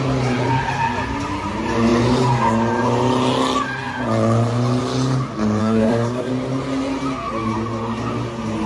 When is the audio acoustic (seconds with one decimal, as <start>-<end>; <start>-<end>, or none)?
0.0-5.6; 6.3-8.7